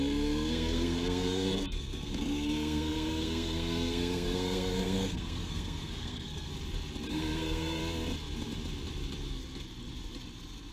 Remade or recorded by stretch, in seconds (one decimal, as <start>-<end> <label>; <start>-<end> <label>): 0.0-6.5 remade; 6.5-7.1 recorded; 7.1-7.8 remade; 7.8-10.7 recorded